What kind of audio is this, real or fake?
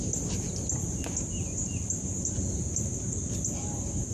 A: real